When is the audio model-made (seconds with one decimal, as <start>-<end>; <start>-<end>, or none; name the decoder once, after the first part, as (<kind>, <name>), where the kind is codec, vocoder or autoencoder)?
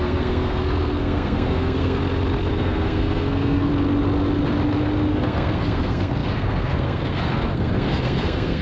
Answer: 0.0-2.0 (codec, SNAC); 2.5-3.7; 5.1-8.6